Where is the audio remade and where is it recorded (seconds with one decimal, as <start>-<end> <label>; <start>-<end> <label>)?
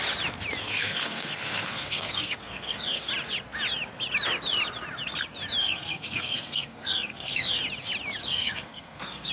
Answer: 0.0-0.6 recorded; 0.6-3.1 remade; 3.1-5.6 recorded; 5.6-7.6 remade; 7.6-8.2 recorded; 8.2-9.3 remade